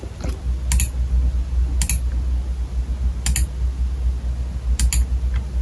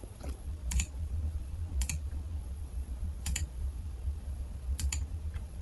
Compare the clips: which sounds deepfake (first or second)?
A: second